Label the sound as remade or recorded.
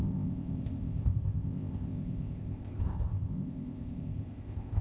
remade